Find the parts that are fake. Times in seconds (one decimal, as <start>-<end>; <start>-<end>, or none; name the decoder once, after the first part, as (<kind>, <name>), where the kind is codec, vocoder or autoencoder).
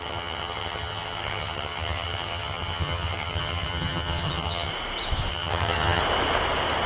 0.0-4.7 (vocoder, HiFi-GAN); 5.3-6.0